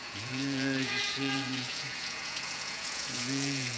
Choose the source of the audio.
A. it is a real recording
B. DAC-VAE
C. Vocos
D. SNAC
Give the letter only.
C